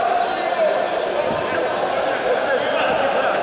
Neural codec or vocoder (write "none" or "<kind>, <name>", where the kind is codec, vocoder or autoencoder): none